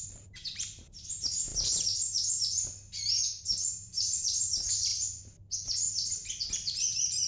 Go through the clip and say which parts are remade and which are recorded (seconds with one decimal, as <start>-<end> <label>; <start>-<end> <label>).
0.0-1.5 remade; 1.5-3.4 recorded; 3.4-4.9 remade; 4.9-6.5 recorded; 6.5-7.3 remade